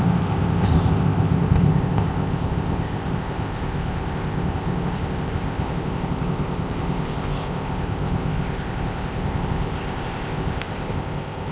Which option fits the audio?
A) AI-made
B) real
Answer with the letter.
A